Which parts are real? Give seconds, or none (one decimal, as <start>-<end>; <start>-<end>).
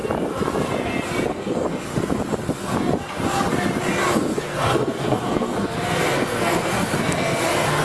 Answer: 0.0-1.3; 1.9-4.4